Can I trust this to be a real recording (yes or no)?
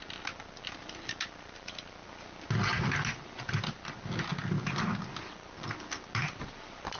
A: yes